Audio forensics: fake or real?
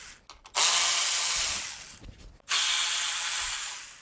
real